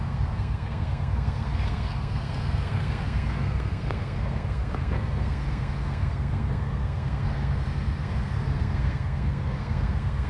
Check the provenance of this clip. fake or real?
fake